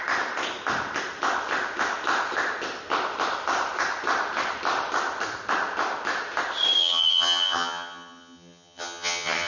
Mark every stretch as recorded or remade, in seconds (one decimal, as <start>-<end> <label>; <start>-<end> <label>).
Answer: 0.0-6.8 recorded; 6.8-9.5 remade